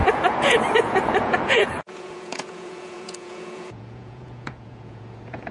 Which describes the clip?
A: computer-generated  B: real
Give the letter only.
A